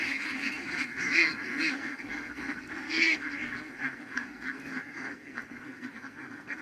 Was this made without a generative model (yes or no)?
no